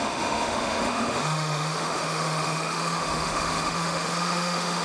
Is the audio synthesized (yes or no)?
yes